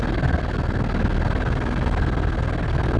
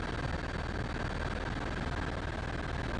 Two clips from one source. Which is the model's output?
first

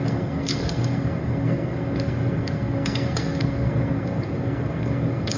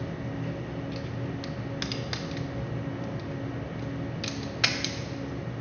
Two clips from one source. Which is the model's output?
first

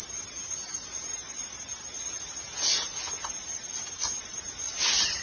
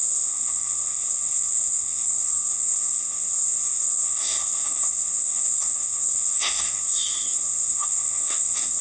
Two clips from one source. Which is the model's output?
second